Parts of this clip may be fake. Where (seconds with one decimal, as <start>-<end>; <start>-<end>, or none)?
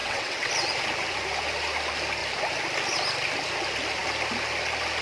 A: 0.0-0.5